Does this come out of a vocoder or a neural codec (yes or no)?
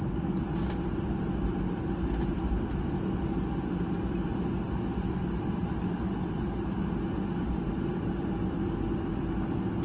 no